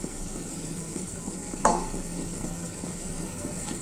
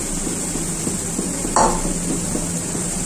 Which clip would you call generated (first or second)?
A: first